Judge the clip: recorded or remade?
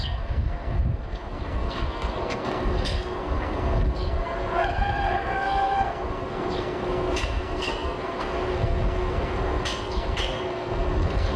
remade